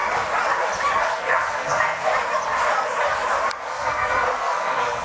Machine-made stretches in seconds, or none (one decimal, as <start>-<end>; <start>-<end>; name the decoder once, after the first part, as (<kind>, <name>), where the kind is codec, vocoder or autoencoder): 1.0-2.1 (codec, SNAC); 3.6-5.0